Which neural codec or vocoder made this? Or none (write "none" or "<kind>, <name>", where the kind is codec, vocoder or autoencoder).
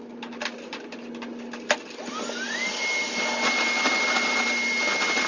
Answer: none